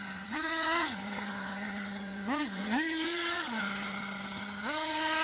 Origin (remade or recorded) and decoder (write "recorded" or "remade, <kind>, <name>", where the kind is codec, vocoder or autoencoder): remade, vocoder, HiFi-GAN